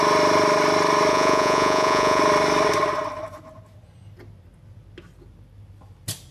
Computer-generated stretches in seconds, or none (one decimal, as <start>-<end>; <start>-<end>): 1.1-2.2